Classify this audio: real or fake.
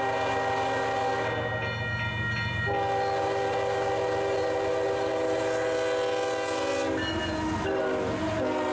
real